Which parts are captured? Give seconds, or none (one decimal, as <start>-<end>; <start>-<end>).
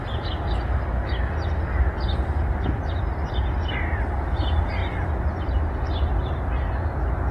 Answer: 0.0-7.3